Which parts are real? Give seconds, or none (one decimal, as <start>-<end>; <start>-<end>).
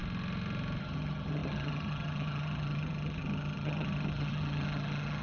0.0-0.8